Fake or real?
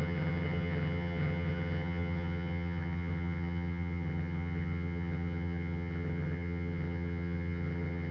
fake